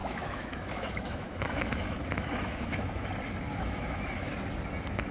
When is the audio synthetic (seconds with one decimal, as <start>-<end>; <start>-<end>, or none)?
0.0-3.1; 3.6-4.3